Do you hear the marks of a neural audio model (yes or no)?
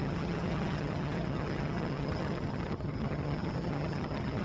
yes